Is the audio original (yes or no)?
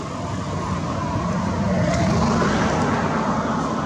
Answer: yes